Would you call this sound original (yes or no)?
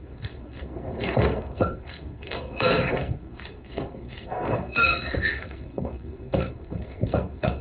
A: no